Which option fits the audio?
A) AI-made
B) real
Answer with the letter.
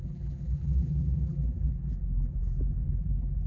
A